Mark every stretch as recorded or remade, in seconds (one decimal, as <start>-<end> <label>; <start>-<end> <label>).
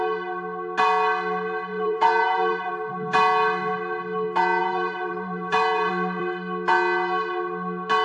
0.0-1.7 recorded; 1.7-2.7 remade; 2.7-4.6 recorded; 4.6-5.9 remade; 5.9-8.0 recorded